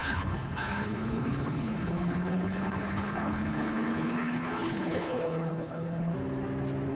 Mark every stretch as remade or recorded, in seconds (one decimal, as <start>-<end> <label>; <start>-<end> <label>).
0.0-6.1 remade; 6.1-6.9 recorded